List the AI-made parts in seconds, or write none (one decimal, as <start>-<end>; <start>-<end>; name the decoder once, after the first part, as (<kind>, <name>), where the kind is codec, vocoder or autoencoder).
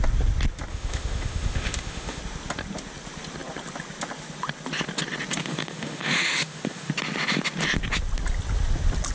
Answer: 0.7-2.2 (autoencoder, DAC-VAE); 5.4-6.9